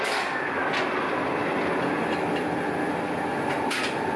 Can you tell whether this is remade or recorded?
recorded